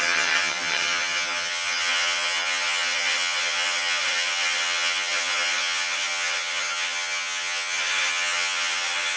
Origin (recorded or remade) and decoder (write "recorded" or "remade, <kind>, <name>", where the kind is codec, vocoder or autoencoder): remade, vocoder, HiFi-GAN